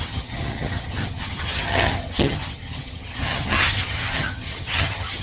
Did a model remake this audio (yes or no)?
yes